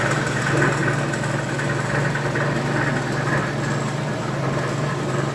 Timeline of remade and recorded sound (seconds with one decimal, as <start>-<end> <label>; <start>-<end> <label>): 0.0-0.8 remade; 0.8-4.0 recorded; 4.0-5.3 remade